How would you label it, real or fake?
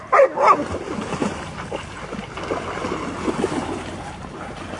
real